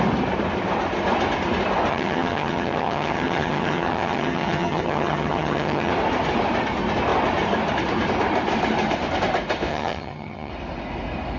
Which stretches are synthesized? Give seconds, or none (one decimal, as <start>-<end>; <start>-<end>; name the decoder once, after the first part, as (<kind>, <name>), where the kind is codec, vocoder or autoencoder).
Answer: 1.9-5.9 (vocoder, HiFi-GAN); 9.7-10.5